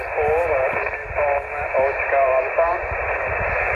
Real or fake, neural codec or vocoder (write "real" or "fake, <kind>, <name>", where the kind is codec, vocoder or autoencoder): real